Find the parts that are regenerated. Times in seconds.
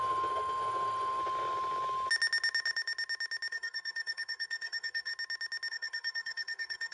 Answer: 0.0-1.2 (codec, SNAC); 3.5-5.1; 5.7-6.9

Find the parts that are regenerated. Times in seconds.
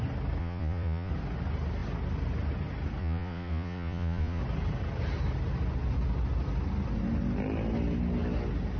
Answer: 0.4-1.1 (vocoder, Vocos); 3.0-4.4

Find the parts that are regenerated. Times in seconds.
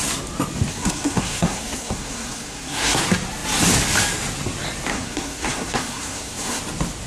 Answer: 0.7-3.0 (codec, SNAC); 4.9-6.6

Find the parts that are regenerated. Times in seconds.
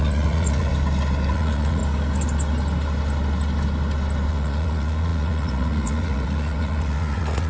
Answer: 0.0-0.7 (vocoder, Vocos); 1.3-1.8; 4.3-7.5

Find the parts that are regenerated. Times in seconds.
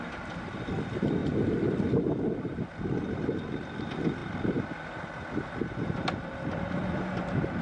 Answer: none